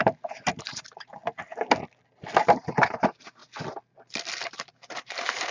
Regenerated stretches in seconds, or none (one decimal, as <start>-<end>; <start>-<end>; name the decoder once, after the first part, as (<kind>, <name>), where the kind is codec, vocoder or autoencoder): 0.0-1.2 (vocoder, BigVGAN v2); 2.7-3.4; 4.4-5.5